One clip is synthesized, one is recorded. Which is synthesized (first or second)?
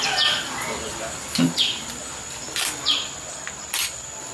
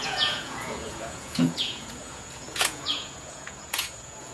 second